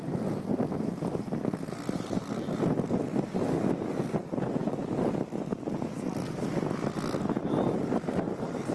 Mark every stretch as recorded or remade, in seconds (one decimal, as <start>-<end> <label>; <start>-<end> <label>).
0.0-8.7 recorded